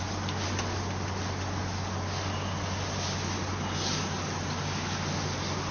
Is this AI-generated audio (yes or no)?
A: no